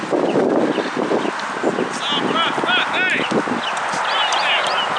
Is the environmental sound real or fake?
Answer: real